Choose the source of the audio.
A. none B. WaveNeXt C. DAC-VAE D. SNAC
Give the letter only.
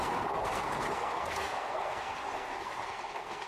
D